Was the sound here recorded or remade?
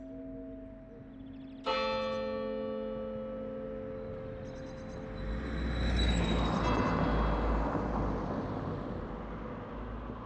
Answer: recorded